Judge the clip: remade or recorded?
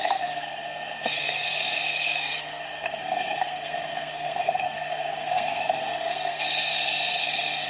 remade